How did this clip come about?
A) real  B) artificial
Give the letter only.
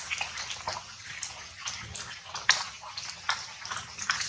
A